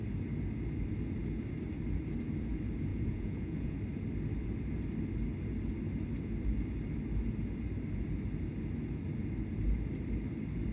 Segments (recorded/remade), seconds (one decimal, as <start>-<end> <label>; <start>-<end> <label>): 0.0-2.9 recorded; 2.9-3.8 remade; 3.8-10.7 recorded